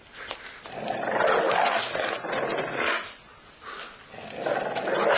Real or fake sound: real